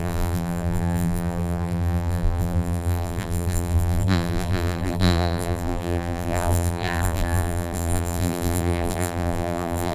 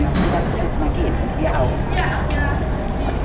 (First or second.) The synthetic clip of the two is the first